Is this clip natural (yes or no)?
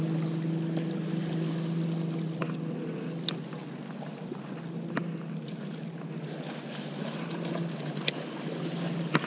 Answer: yes